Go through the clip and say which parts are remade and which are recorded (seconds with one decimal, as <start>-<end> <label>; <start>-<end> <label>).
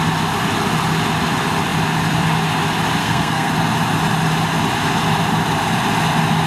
0.0-3.0 recorded; 3.0-3.5 remade; 3.5-6.5 recorded